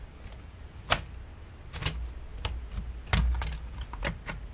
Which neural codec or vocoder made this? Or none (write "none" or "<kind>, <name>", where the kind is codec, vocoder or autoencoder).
none